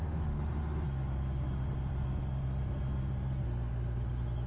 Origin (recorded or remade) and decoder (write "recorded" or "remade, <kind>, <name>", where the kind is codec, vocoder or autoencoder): recorded